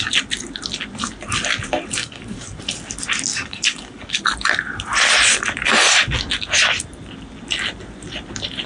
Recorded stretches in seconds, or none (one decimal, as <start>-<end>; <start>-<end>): 0.0-2.0; 2.6-3.3; 4.2-8.7